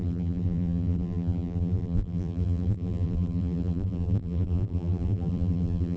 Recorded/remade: remade